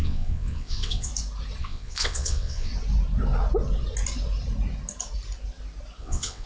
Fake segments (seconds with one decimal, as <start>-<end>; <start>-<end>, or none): 0.0-1.1; 1.6-2.7; 6.0-6.5